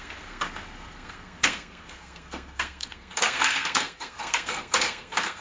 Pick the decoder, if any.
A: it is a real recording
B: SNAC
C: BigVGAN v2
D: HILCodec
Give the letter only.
B